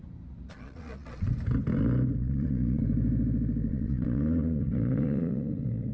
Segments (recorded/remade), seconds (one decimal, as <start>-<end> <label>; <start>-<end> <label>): 0.0-0.5 recorded; 0.5-1.3 remade; 1.3-2.2 recorded; 2.2-2.8 remade; 2.8-3.7 recorded; 3.7-5.9 remade